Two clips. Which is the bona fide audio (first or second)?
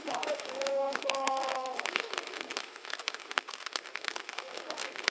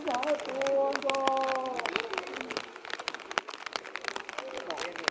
second